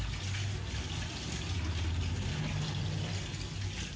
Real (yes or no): yes